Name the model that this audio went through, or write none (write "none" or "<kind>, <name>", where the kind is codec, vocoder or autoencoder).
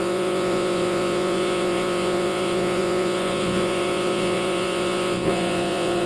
vocoder, Vocos